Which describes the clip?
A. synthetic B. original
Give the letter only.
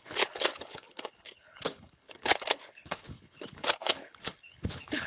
A